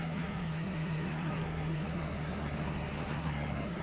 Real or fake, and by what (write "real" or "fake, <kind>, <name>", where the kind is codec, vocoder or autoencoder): fake, codec, SNAC